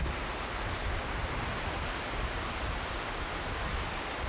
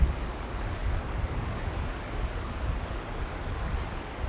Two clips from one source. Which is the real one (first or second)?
first